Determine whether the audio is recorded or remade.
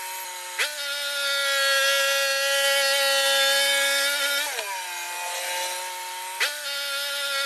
recorded